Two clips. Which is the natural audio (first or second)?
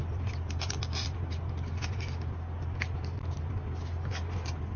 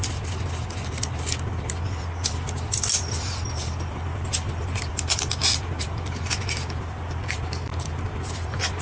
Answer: first